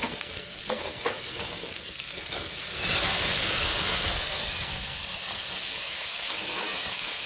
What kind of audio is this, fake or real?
fake